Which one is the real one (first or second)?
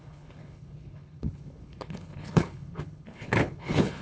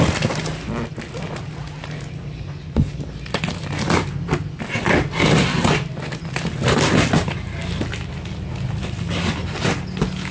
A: second